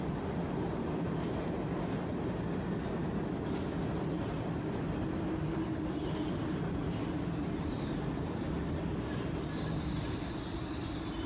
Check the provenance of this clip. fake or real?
real